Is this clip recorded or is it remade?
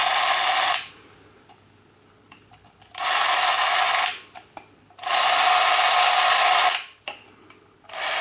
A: recorded